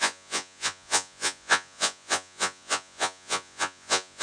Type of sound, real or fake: fake